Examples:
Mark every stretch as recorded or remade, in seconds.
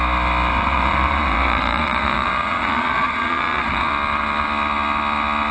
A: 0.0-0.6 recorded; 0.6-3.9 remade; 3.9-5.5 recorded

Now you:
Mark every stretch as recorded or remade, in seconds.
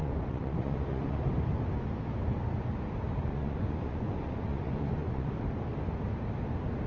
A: 0.0-1.2 remade; 1.2-3.2 recorded; 3.2-5.3 remade; 5.3-6.9 recorded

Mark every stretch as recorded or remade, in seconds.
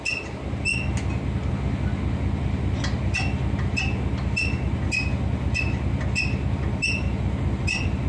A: 0.0-8.1 recorded